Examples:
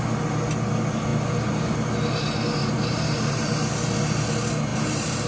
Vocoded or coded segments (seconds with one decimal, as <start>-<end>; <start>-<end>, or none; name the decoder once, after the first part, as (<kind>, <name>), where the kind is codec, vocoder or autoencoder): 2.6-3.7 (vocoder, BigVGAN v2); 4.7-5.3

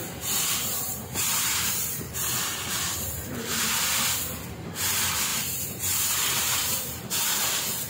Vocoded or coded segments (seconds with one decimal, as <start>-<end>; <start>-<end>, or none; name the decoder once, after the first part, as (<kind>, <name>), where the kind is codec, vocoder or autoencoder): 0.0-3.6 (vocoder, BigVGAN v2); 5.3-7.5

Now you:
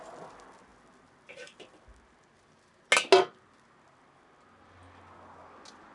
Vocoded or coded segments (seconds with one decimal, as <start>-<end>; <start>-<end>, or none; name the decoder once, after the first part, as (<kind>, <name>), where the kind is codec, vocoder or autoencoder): none

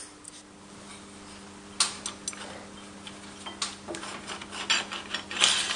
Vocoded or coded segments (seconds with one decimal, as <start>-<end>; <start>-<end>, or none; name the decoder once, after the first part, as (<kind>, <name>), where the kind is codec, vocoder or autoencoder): none

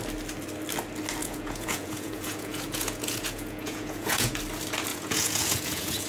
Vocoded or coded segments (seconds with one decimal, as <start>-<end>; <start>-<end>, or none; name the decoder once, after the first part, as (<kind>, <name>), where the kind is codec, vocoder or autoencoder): 1.2-4.4 (vocoder, Vocos); 4.9-6.1

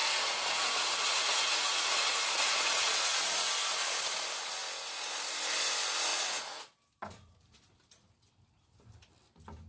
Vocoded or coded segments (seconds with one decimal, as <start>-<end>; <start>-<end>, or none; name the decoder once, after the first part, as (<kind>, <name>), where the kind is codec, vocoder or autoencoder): 0.0-3.5 (vocoder, Vocos); 6.1-6.6